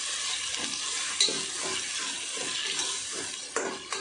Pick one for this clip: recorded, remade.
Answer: recorded